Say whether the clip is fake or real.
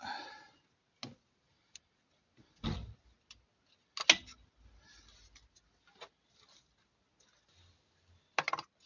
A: real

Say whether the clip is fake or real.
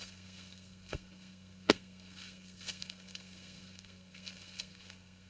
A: fake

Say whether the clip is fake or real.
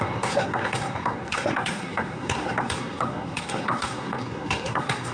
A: fake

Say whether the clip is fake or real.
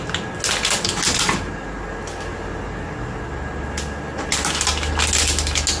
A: real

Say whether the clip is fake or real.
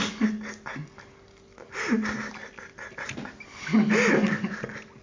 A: real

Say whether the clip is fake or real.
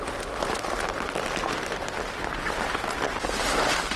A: real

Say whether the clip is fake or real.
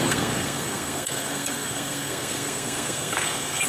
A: fake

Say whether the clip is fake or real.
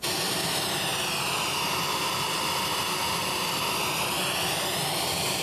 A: real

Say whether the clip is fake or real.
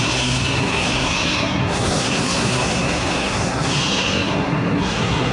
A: fake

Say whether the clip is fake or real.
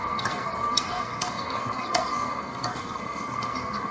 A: fake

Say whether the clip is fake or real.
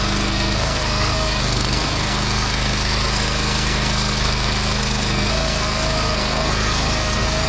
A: fake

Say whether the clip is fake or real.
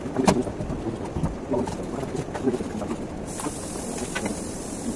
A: real